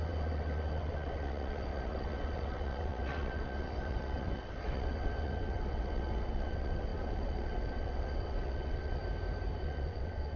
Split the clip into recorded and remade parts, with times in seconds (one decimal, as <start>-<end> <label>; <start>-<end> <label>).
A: 0.0-9.0 remade; 9.0-9.6 recorded; 9.6-10.4 remade